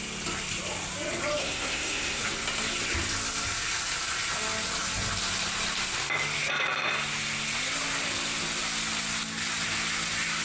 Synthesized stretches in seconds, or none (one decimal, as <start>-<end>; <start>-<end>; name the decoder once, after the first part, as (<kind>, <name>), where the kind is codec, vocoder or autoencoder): 1.4-2.2 (codec, SNAC)